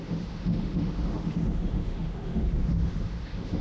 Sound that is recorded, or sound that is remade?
remade